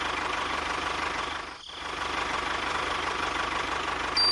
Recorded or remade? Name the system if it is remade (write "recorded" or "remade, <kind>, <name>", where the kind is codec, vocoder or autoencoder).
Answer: recorded